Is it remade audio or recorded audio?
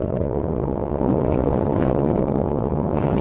remade